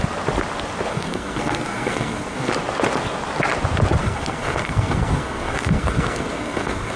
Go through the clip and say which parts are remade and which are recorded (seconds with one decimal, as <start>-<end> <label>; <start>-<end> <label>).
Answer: 0.0-0.9 recorded; 0.9-2.5 remade; 2.5-4.0 recorded; 4.0-7.0 remade